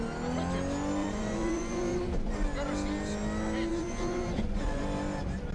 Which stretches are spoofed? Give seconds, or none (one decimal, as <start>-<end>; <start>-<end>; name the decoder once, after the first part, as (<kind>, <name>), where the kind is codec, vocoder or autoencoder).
1.0-2.3 (vocoder, Vocos); 3.7-4.8